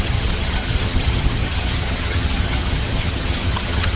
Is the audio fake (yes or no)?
yes